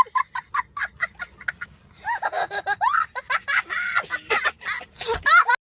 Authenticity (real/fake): real